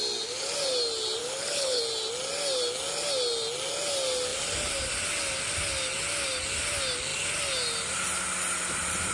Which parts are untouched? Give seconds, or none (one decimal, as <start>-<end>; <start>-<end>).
0.0-1.2; 1.8-9.1